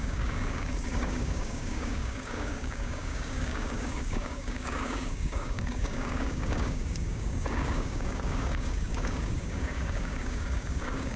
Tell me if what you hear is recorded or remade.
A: remade